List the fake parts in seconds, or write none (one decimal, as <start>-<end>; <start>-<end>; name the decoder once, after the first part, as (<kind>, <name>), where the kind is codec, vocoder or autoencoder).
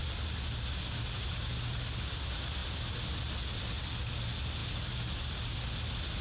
none